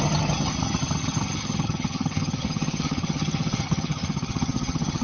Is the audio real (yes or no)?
no